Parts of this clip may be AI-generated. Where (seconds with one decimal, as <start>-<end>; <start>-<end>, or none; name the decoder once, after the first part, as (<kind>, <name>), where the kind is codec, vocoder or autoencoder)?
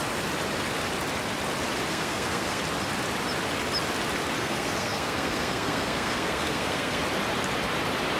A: 1.9-2.6 (codec, SNAC); 4.4-7.0